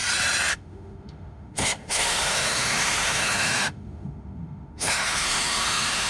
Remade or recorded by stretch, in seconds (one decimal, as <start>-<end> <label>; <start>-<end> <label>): 0.0-0.5 recorded; 0.5-6.1 remade